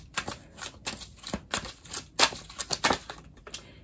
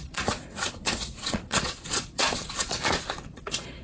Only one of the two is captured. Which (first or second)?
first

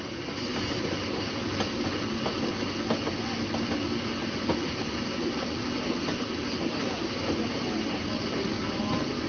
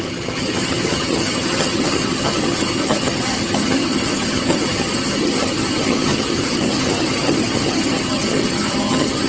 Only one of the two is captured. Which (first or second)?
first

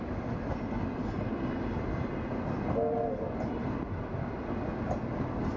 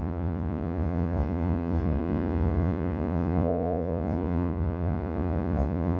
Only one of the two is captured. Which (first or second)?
first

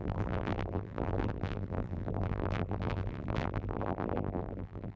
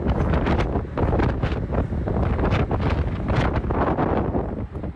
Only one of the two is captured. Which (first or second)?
second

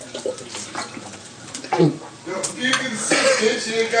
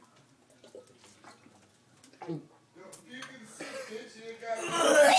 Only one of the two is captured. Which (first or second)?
second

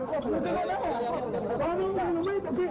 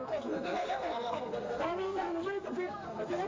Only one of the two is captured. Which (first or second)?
first